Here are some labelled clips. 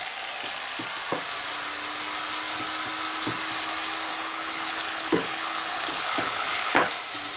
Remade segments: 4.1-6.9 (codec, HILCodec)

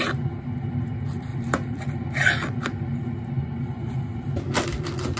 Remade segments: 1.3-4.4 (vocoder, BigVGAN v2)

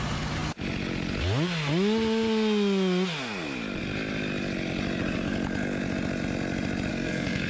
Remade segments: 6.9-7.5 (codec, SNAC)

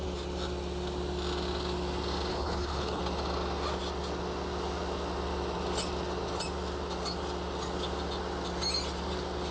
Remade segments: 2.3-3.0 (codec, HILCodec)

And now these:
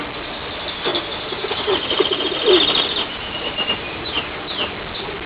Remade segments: 0.9-4.1 (vocoder, BigVGAN v2)